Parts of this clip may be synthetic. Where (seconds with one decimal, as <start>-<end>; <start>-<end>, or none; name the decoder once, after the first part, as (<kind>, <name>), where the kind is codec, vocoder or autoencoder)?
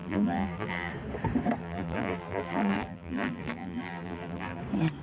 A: 0.0-0.9 (vocoder, BigVGAN v2); 1.6-4.6